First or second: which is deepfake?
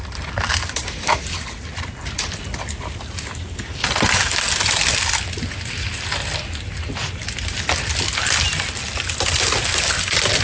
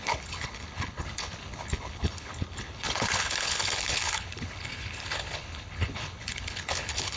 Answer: second